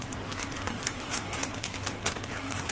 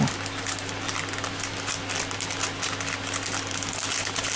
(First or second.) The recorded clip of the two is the second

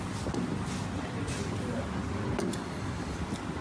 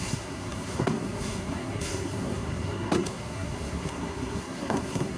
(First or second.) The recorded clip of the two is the first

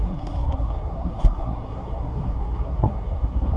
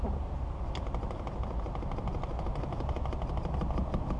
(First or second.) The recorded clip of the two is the second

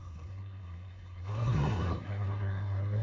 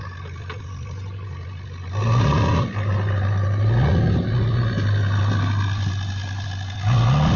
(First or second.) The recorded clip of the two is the second